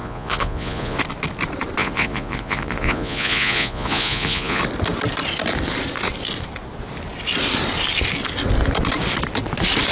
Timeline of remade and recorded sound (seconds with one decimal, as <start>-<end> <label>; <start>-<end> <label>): 0.0-1.0 remade; 1.0-1.8 recorded; 1.8-4.6 remade; 4.6-9.9 recorded